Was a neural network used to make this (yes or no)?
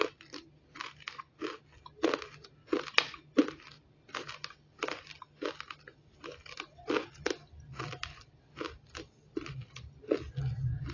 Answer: no